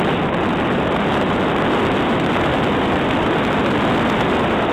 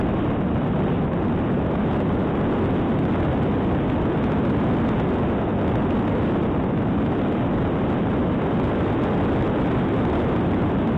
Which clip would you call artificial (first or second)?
first